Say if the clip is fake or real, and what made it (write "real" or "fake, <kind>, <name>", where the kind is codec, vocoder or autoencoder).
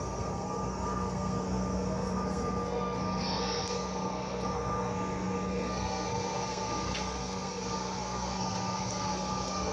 fake, codec, SNAC